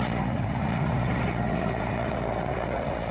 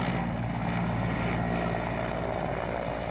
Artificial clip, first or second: first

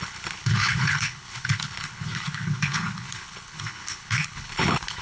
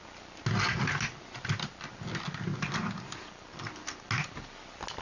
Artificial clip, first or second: first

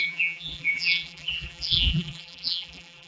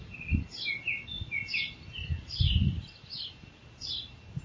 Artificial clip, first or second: first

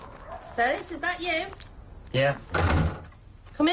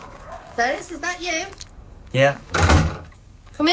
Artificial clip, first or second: second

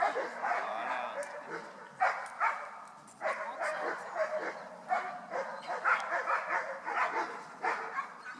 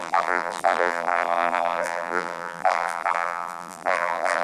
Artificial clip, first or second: second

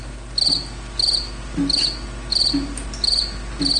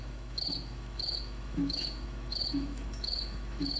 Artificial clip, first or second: second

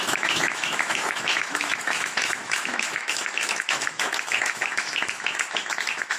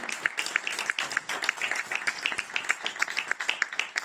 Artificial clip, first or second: first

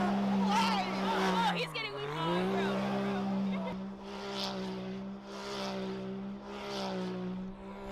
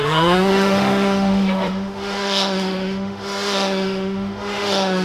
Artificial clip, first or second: second